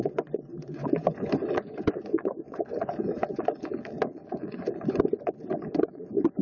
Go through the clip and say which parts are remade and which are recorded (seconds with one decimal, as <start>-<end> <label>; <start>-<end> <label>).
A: 0.0-3.7 remade; 3.7-4.4 recorded; 4.4-6.4 remade